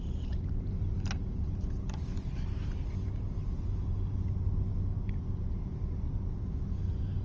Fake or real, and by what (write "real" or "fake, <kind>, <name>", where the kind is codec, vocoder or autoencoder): real